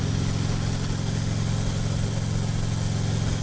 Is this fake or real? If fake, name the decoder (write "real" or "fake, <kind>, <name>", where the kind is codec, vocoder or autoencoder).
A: real